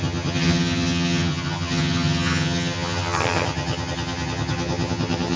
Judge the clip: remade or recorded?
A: remade